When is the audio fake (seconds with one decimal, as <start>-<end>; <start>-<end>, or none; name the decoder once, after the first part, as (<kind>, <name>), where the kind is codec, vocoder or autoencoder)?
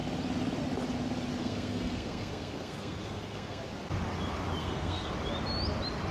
1.4-3.6 (codec, SNAC); 4.6-5.1